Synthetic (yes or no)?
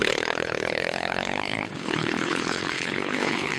yes